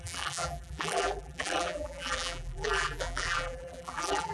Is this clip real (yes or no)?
no